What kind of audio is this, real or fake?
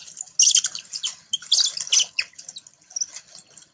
real